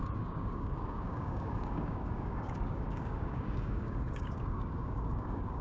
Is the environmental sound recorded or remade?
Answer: remade